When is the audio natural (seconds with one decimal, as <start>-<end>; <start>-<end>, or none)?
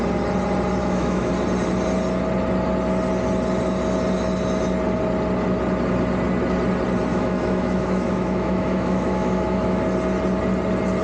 0.0-0.8; 1.3-7.1; 9.8-11.0